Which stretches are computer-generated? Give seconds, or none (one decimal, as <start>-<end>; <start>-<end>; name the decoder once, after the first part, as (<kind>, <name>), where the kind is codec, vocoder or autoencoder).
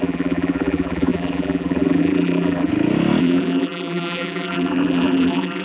0.0-2.7 (vocoder, BigVGAN v2); 3.2-5.6